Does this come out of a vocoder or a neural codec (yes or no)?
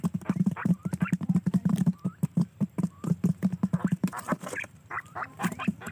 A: yes